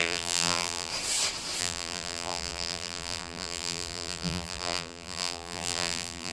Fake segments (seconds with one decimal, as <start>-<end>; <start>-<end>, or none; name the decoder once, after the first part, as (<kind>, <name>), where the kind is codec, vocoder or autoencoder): 0.0-0.9 (vocoder, BigVGAN v2); 1.6-6.3